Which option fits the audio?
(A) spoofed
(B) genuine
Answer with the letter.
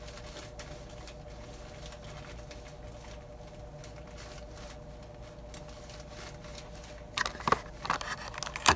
B